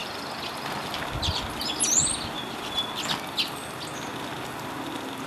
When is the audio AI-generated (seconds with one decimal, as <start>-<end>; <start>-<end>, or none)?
none